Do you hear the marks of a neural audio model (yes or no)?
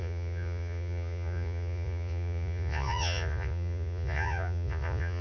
yes